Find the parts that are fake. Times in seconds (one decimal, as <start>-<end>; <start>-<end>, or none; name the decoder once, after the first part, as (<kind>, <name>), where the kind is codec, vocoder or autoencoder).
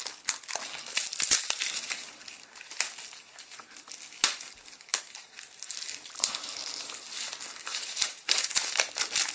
4.9-5.4 (vocoder, BigVGAN v2); 7.7-8.9